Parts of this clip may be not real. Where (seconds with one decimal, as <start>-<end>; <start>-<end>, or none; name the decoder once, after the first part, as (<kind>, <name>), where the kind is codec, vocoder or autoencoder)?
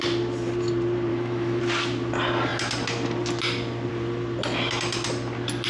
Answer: 1.1-1.6 (autoencoder, DAC-VAE)